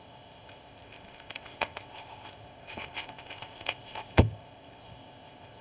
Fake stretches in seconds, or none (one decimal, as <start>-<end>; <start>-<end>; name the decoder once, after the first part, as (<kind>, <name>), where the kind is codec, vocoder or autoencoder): 0.0-5.6 (codec, ZipCodec)